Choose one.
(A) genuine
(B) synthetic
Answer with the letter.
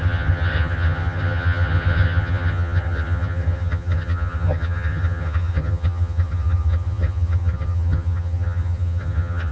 B